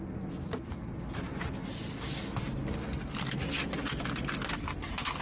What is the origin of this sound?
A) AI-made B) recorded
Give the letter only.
B